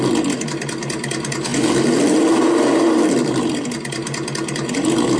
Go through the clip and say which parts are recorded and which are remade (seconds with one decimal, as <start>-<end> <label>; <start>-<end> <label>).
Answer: 0.0-5.2 recorded